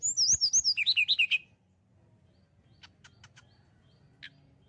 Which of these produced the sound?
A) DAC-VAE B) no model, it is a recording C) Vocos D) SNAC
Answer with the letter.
B